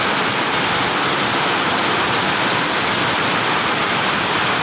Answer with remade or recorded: recorded